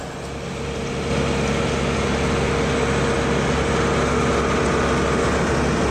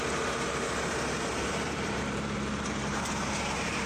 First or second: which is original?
first